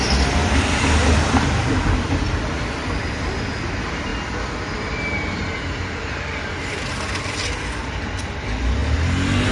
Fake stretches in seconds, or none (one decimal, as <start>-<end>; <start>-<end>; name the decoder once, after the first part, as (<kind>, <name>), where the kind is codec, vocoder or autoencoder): none